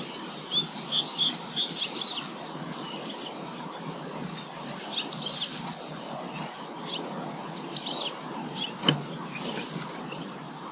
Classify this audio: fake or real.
real